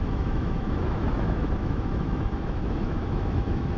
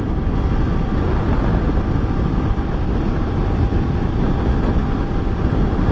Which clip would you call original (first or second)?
second